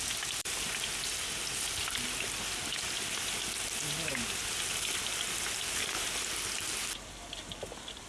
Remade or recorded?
recorded